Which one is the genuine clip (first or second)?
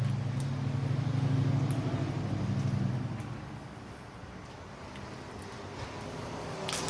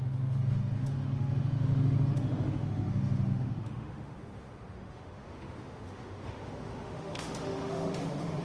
first